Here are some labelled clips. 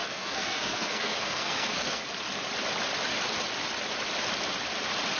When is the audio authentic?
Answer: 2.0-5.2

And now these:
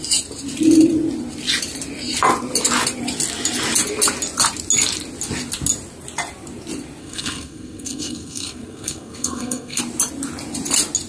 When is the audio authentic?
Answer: 0.0-7.0; 9.8-11.1